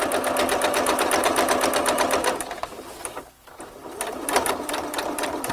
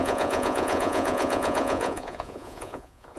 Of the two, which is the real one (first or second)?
first